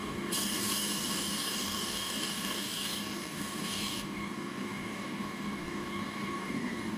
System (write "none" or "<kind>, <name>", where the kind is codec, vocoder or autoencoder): codec, DAC